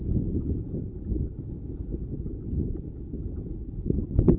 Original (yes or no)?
yes